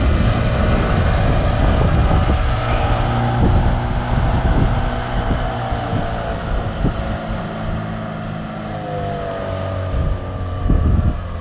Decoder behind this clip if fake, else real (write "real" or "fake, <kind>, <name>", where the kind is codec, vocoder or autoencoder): real